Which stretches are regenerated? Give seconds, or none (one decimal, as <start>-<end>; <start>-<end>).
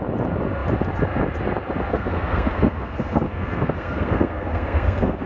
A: 1.9-5.3